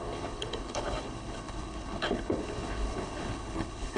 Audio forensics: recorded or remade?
remade